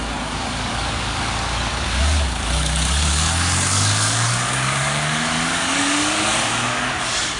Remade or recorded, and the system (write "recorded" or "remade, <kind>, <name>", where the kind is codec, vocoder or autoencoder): remade, codec, DAC